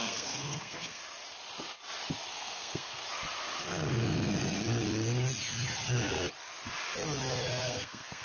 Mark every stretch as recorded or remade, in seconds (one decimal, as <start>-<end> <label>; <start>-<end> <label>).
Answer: 0.0-1.0 remade; 1.0-2.3 recorded; 2.3-3.0 remade; 3.0-7.6 recorded; 7.6-8.2 remade